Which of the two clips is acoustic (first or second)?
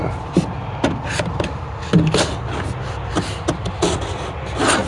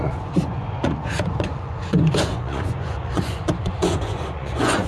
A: first